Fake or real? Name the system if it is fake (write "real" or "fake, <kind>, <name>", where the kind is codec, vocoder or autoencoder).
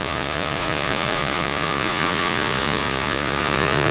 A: fake, vocoder, Vocos